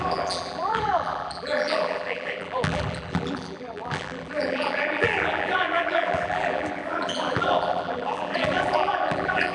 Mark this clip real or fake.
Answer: fake